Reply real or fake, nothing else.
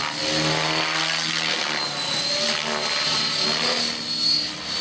real